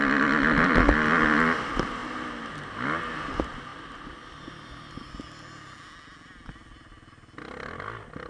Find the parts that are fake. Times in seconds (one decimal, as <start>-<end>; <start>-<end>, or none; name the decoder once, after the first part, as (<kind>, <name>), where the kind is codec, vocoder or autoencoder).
none